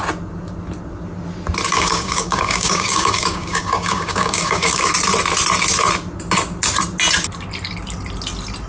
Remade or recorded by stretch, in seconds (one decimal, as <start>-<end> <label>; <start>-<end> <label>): 0.0-1.7 recorded; 1.7-4.9 remade; 4.9-8.7 recorded